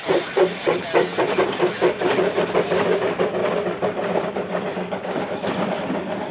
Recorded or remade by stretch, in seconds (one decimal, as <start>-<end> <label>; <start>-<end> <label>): 0.0-4.7 recorded; 4.7-5.3 remade; 5.3-6.3 recorded